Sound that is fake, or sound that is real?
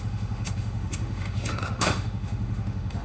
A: fake